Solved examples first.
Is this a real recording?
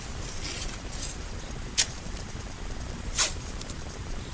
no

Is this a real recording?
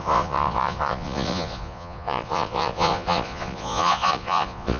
no